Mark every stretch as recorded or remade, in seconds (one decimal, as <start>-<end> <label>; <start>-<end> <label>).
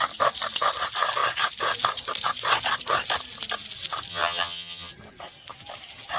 0.0-4.1 recorded; 4.1-4.9 remade; 4.9-6.2 recorded